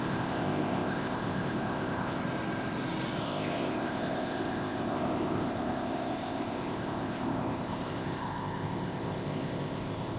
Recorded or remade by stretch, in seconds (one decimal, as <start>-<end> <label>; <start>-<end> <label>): 0.0-2.2 remade; 2.2-3.2 recorded; 3.2-10.2 remade